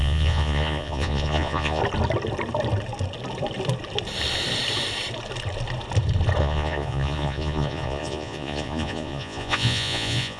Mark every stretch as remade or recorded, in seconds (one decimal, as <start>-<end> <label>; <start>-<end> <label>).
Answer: 0.0-1.8 remade; 1.8-6.4 recorded; 6.4-10.4 remade